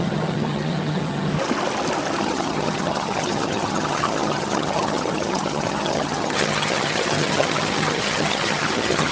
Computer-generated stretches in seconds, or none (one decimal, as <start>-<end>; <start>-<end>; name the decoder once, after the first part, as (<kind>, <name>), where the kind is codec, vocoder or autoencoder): 0.0-1.3 (vocoder, HiFi-GAN); 2.2-9.1